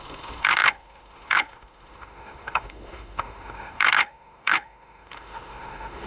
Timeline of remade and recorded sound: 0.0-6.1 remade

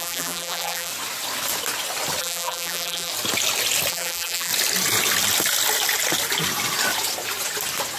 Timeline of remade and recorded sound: 0.0-0.9 remade; 0.9-2.2 recorded; 2.2-3.1 remade; 3.1-3.9 recorded; 3.9-4.5 remade; 4.5-8.0 recorded

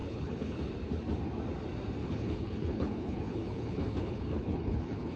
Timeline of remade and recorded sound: 0.0-0.7 remade; 0.7-2.0 recorded; 2.0-5.2 remade

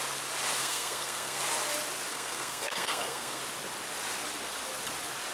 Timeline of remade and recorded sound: 0.0-0.6 recorded; 0.6-1.4 remade; 1.4-2.1 recorded; 2.1-3.4 remade; 3.4-5.3 recorded

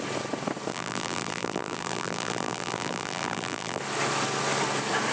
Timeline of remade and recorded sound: 0.0-0.7 recorded; 0.7-3.8 remade; 3.8-5.1 recorded

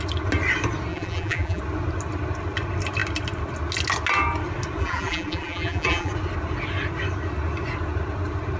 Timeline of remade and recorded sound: 0.0-0.9 recorded; 0.9-1.6 remade; 1.6-4.8 recorded; 4.8-6.1 remade; 6.1-8.6 recorded